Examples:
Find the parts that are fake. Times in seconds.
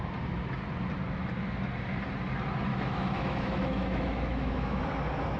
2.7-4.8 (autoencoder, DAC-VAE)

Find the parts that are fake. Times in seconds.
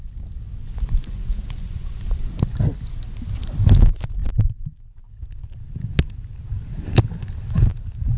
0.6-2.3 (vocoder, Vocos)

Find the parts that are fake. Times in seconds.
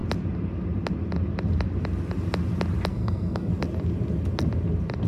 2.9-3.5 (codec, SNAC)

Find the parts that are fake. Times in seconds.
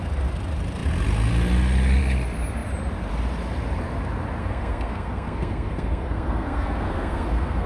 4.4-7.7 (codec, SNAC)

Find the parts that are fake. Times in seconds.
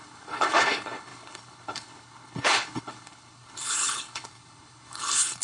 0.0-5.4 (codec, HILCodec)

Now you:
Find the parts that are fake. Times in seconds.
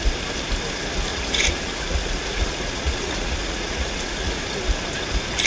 1.1-4.4 (vocoder, Vocos)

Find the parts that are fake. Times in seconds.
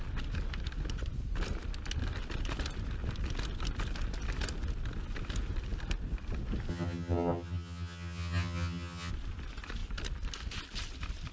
6.7-9.1 (vocoder, HiFi-GAN)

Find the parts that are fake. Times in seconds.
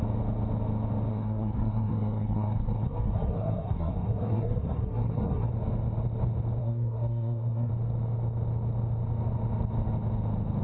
1.1-5.5 (codec, SNAC); 6.6-7.7